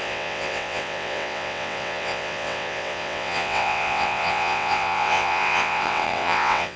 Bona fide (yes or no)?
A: no